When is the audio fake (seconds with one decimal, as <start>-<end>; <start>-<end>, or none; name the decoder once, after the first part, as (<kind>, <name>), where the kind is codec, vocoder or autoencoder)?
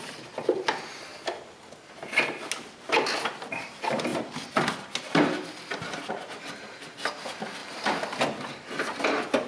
none